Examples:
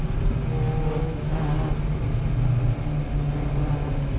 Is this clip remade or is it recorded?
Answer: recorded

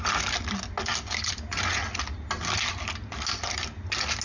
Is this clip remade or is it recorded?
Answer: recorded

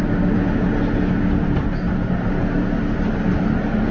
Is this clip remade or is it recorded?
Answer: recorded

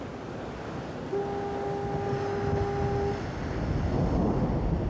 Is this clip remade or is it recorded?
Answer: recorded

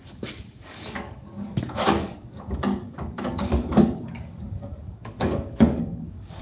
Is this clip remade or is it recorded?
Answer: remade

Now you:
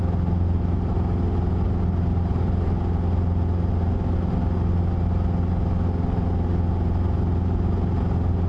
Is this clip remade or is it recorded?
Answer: recorded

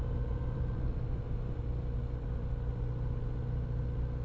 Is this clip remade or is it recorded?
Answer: recorded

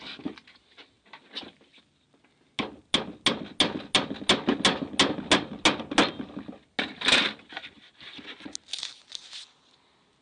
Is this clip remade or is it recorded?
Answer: recorded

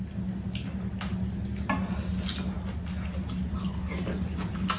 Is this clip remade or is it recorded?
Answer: recorded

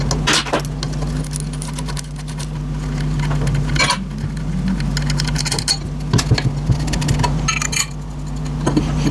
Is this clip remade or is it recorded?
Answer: recorded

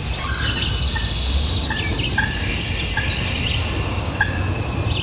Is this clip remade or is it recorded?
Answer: recorded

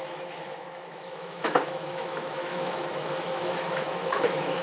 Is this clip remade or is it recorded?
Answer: remade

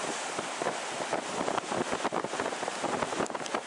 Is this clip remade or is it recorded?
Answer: recorded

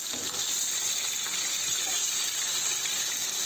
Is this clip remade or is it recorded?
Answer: recorded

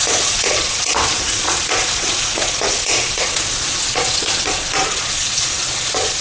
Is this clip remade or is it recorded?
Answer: remade